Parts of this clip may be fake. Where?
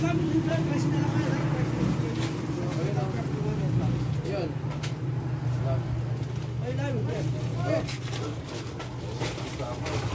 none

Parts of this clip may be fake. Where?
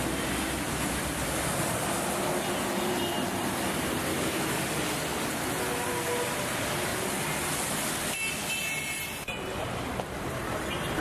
4.1-4.6 (autoencoder, DAC-VAE)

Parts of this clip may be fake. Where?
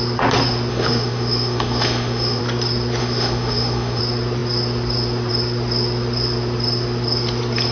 0.7-2.4 (autoencoder, DAC-VAE); 3.0-4.0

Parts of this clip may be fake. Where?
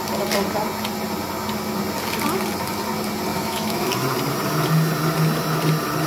3.3-3.9 (autoencoder, DAC-VAE)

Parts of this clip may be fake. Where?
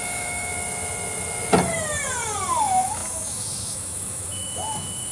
0.0-0.5 (autoencoder, DAC-VAE); 2.6-5.1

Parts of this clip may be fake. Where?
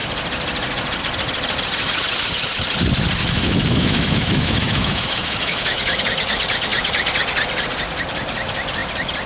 3.2-6.0 (autoencoder, DAC-VAE)